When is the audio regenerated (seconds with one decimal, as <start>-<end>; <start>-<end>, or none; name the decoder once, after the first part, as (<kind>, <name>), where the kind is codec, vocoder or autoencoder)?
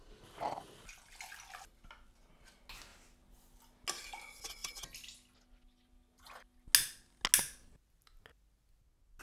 none